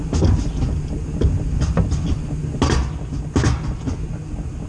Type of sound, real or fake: real